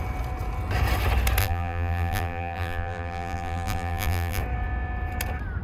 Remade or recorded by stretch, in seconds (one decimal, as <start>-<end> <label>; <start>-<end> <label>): 0.0-1.4 recorded; 1.4-4.4 remade; 4.4-5.6 recorded